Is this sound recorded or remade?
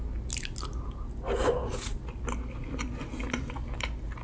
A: recorded